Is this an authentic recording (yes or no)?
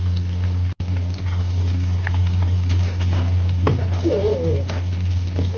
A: no